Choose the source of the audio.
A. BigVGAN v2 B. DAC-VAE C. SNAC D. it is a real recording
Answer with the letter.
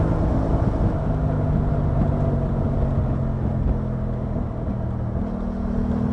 D